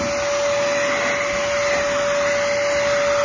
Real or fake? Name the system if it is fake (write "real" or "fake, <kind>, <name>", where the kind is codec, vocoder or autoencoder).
real